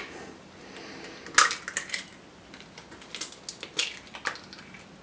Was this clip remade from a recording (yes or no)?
no